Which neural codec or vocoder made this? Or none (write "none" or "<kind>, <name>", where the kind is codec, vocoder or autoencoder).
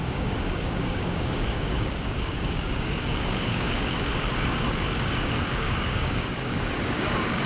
codec, DAC